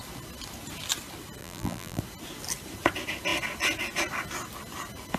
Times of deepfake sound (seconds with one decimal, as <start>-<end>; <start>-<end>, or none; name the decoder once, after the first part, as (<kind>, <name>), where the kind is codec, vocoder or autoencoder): 1.4-2.0 (vocoder, BigVGAN v2)